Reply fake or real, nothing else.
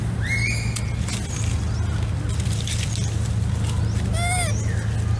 real